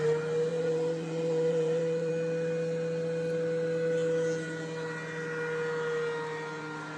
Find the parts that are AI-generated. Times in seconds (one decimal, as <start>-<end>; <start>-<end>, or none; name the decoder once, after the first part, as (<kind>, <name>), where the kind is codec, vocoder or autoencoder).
0.5-2.1 (vocoder, Vocos)